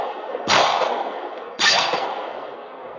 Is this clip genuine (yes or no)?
no